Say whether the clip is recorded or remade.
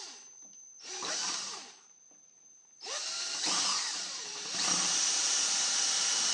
remade